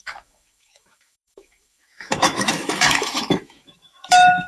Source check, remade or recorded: remade